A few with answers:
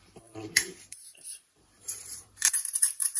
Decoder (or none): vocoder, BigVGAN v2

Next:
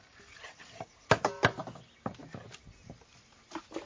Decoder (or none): none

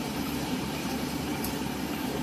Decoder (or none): vocoder, BigVGAN v2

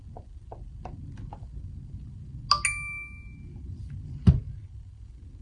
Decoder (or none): none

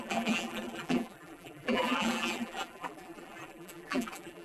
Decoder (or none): vocoder, BigVGAN v2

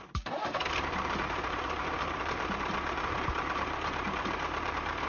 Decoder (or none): vocoder, BigVGAN v2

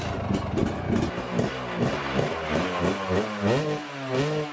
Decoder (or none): none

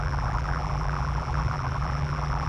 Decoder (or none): vocoder, BigVGAN v2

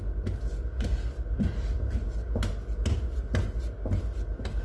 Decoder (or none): none